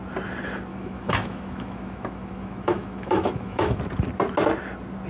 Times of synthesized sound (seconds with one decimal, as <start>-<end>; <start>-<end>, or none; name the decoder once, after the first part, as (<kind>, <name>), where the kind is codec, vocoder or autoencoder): 0.7-3.8 (autoencoder, DAC-VAE)